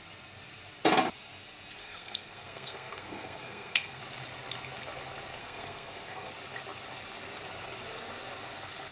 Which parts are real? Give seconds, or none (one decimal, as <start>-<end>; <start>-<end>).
0.0-1.8; 4.0-5.4; 6.3-8.9